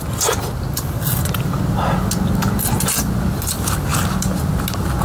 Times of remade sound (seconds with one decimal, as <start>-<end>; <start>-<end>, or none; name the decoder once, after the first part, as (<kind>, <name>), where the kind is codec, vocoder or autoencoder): none